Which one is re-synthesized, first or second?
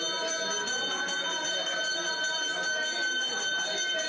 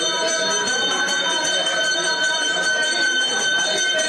second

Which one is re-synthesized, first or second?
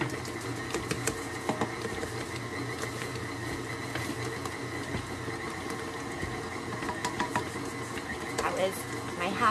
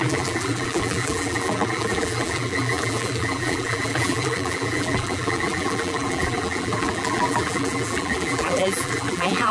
second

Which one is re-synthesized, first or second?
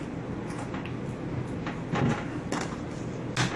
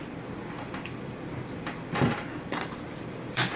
second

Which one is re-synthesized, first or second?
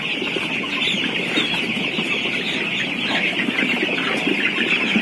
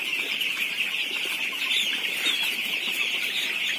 second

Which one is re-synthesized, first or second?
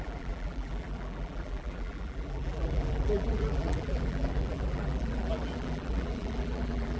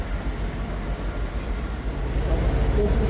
first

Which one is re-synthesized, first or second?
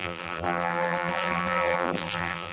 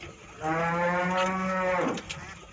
first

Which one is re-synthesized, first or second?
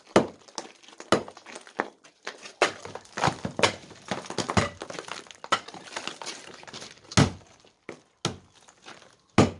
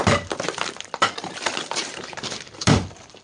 second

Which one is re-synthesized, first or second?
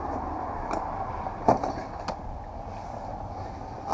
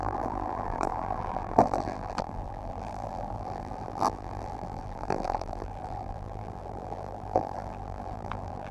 second